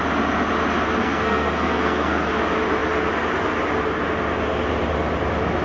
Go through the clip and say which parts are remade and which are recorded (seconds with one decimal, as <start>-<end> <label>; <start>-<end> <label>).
0.0-1.0 recorded; 1.0-2.3 remade; 2.3-5.6 recorded